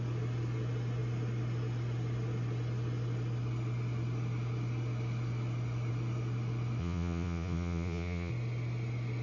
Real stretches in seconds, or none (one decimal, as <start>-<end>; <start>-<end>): 0.0-6.8; 8.3-9.2